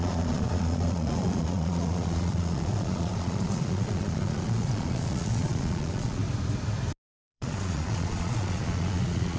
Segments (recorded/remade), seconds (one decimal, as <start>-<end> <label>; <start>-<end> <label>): 0.0-6.2 remade; 6.2-7.2 recorded; 7.2-9.4 remade